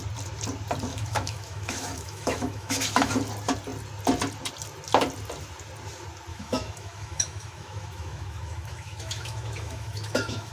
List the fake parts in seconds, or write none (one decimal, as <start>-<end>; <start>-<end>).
0.9-3.1; 6.3-10.5